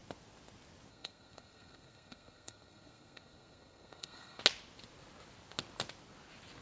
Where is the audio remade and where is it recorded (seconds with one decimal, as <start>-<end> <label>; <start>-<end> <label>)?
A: 0.0-0.9 recorded; 0.9-4.4 remade; 4.4-6.6 recorded